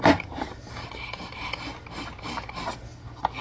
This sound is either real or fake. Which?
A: real